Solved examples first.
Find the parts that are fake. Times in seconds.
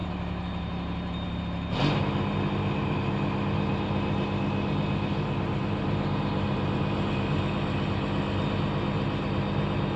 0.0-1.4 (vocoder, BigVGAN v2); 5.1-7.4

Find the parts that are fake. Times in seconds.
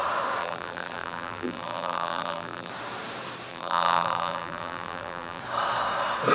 0.4-2.7 (vocoder, BigVGAN v2); 3.5-5.4